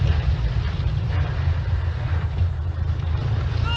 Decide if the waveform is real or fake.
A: real